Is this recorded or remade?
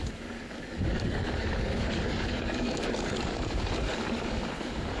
remade